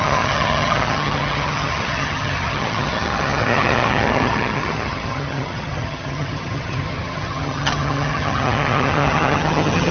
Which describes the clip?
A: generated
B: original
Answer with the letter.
A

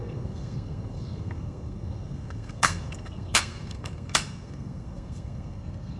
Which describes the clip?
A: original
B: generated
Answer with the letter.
B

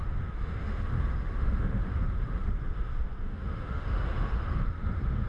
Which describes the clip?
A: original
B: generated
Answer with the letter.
B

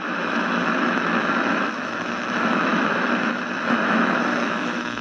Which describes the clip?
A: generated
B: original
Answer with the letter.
A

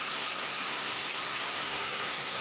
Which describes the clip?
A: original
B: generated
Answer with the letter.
B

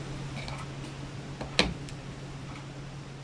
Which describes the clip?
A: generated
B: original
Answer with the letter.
B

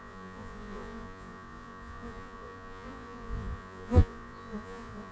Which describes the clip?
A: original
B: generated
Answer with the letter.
B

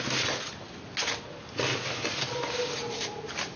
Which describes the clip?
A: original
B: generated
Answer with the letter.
A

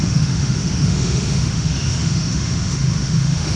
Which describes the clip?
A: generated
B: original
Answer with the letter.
A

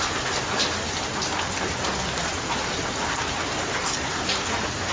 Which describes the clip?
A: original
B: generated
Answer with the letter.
A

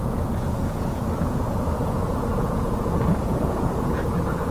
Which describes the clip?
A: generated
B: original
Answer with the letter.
A